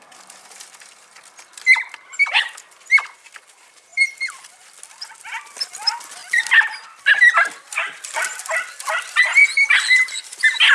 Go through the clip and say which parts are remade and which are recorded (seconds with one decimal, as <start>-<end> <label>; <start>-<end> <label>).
0.0-10.7 recorded